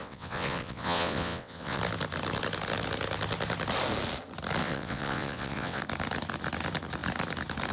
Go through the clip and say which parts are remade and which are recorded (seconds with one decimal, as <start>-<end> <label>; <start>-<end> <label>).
0.0-1.8 remade; 1.8-4.6 recorded; 4.6-5.8 remade; 5.8-7.7 recorded